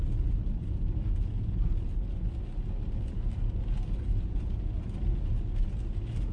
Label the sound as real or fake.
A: real